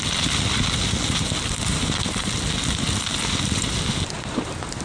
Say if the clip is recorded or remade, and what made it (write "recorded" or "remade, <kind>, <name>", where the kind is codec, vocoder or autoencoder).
recorded